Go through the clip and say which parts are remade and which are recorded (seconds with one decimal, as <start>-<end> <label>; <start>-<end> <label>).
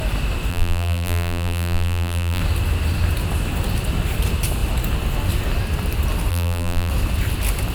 0.0-0.5 recorded; 0.5-2.4 remade; 2.4-6.3 recorded; 6.3-6.9 remade; 6.9-7.7 recorded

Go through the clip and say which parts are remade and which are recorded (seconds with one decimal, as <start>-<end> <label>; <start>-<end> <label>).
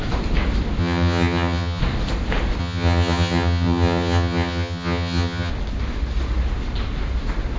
0.0-0.8 recorded; 0.8-1.8 remade; 1.8-2.6 recorded; 2.6-5.5 remade; 5.5-7.6 recorded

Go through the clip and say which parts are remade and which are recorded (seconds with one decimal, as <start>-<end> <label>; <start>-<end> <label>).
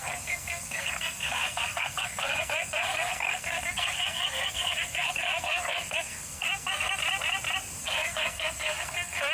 0.0-7.0 remade; 7.0-7.8 recorded; 7.8-9.3 remade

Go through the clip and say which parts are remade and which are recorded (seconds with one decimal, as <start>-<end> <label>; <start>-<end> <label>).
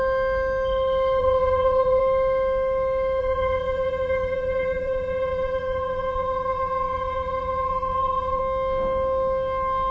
0.0-1.2 recorded; 1.2-2.0 remade; 2.0-3.2 recorded; 3.2-8.4 remade; 8.4-9.9 recorded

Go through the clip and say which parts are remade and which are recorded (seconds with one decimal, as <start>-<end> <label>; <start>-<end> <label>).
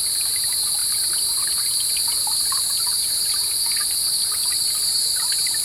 0.0-5.6 recorded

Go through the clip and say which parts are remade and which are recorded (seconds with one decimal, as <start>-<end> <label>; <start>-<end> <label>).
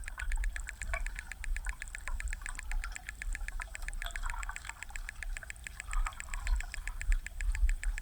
0.0-8.0 recorded